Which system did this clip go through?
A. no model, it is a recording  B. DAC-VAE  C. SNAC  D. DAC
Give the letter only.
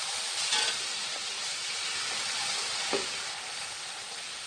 A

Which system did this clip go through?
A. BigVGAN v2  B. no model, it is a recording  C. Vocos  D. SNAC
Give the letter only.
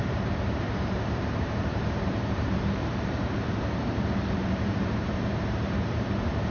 A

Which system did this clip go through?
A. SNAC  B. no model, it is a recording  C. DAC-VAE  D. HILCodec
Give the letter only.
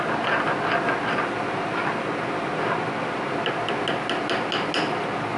B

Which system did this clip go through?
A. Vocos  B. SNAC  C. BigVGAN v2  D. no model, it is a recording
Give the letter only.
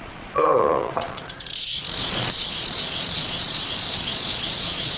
A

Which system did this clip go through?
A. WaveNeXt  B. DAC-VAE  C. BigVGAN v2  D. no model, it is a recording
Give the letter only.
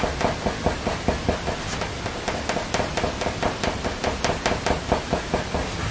D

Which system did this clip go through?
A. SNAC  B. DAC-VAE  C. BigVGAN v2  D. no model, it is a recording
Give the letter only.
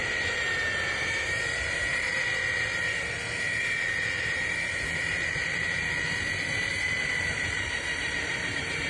C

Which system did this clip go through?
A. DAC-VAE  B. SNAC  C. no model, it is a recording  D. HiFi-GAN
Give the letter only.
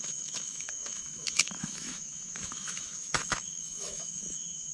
A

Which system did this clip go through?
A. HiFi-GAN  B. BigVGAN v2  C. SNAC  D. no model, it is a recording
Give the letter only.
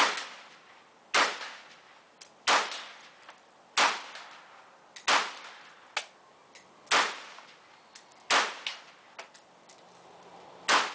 D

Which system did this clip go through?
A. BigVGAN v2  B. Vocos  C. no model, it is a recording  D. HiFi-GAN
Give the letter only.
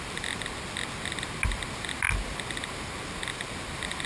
C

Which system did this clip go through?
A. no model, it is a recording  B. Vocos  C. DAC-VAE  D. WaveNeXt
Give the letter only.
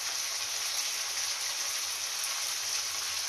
A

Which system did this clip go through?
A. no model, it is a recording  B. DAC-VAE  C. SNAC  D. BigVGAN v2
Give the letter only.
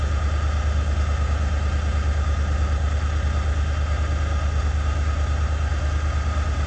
A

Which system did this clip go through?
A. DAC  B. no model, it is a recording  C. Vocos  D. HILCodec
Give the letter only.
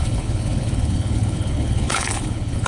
D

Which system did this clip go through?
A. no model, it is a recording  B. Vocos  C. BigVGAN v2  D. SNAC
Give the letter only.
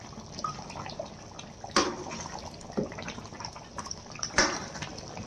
C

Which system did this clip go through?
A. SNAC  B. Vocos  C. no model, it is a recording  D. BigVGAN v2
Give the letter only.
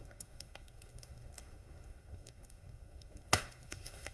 A